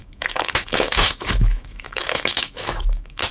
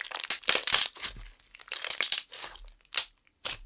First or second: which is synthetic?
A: first